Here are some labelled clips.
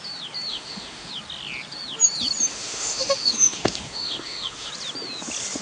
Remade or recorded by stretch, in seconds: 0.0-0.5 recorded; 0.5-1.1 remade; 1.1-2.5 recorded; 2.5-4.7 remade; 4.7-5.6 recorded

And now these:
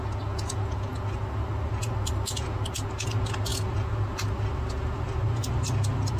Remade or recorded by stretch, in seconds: 0.0-6.2 recorded

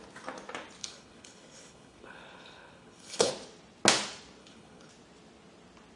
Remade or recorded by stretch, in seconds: 0.0-0.8 recorded; 0.8-3.3 remade; 3.3-4.4 recorded; 4.4-4.9 remade; 4.9-6.0 recorded

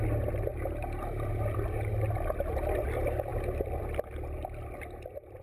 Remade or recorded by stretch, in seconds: 0.0-0.5 recorded; 0.5-1.3 remade; 1.3-5.4 recorded